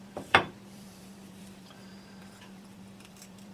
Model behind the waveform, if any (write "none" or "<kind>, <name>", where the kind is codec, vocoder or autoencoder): vocoder, BigVGAN v2